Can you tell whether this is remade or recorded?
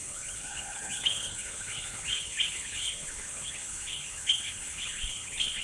remade